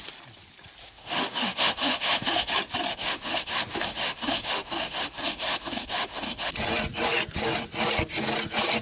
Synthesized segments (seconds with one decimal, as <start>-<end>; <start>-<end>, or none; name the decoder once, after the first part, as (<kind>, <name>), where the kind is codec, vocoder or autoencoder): 0.8-2.5 (autoencoder, DAC-VAE); 2.9-6.5